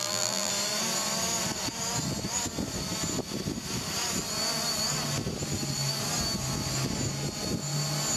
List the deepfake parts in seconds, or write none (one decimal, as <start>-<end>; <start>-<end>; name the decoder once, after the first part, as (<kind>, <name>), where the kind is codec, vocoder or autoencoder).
0.0-0.5 (vocoder, BigVGAN v2)